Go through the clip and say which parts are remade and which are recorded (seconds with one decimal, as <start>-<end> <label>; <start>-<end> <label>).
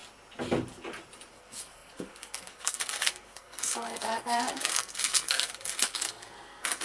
0.0-1.3 recorded; 1.3-6.8 remade